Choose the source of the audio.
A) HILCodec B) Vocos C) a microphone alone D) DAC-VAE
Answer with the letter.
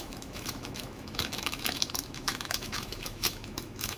D